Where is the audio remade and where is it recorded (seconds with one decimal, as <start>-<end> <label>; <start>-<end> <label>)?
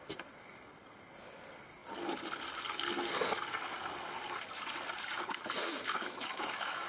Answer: 0.0-5.7 recorded; 5.7-6.9 remade